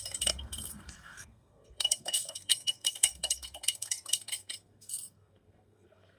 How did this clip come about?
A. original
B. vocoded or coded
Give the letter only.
B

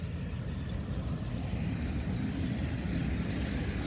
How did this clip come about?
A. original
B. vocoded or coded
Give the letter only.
A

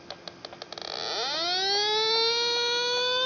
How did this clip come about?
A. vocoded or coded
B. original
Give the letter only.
B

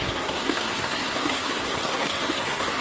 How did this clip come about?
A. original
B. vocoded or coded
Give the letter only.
B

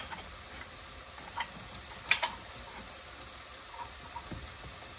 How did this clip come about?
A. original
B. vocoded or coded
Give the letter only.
A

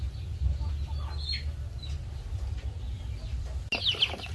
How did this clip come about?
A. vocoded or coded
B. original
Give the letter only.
B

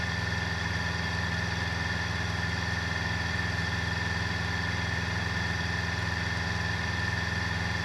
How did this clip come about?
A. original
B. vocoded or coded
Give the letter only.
A